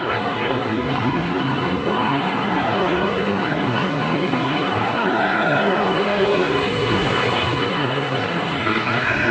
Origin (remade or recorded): remade